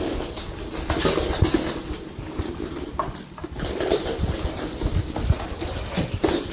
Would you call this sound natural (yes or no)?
yes